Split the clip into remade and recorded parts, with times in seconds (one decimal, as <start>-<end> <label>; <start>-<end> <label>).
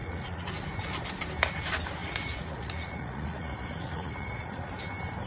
0.0-0.5 remade; 0.5-2.0 recorded; 2.0-4.7 remade; 4.7-5.3 recorded